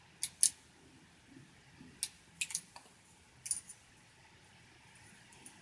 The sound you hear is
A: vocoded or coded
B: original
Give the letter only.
B